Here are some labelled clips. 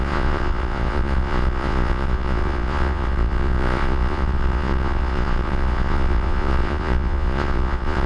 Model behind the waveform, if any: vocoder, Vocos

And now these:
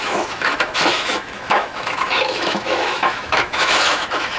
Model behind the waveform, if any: autoencoder, DAC-VAE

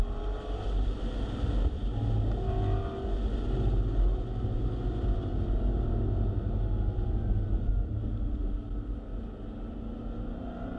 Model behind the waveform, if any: none